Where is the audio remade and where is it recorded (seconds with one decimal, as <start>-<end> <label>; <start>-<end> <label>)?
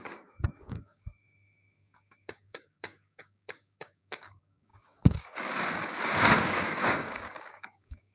0.0-8.1 remade